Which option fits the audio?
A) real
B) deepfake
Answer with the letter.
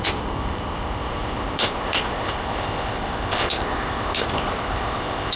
B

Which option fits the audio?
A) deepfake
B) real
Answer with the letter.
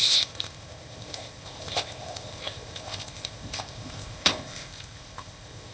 A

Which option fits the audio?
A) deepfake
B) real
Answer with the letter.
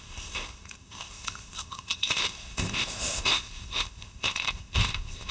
A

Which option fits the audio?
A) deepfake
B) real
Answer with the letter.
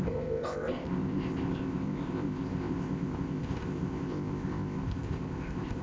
A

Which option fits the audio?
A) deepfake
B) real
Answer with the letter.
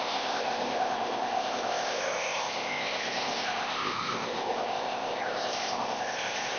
A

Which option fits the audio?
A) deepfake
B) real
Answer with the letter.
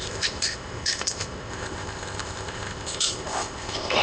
A